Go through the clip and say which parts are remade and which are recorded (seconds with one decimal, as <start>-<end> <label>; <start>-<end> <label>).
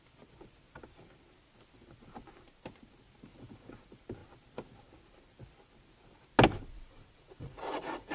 0.0-3.3 recorded; 3.3-3.8 remade; 3.8-6.7 recorded; 6.7-8.1 remade